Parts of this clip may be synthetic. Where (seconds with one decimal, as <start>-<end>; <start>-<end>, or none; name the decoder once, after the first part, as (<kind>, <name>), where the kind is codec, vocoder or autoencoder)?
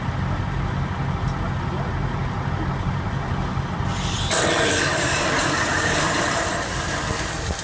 5.7-7.0 (vocoder, BigVGAN v2)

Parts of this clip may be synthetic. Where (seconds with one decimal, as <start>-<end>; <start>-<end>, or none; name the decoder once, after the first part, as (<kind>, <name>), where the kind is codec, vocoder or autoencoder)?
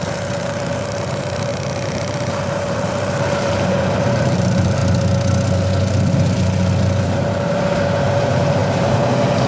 0.0-4.8 (vocoder, BigVGAN v2); 7.0-9.5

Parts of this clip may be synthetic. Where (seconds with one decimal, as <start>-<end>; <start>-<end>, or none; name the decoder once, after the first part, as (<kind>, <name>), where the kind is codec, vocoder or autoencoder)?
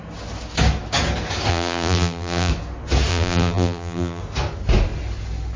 1.5-2.5 (vocoder, BigVGAN v2); 3.1-4.2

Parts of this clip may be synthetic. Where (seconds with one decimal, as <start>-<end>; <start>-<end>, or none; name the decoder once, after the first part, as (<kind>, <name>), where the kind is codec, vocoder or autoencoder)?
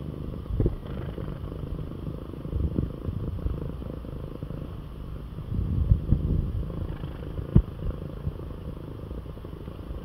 0.8-1.8 (vocoder, BigVGAN v2)